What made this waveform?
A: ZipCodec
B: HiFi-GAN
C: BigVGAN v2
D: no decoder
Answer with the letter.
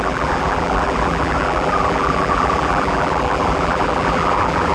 C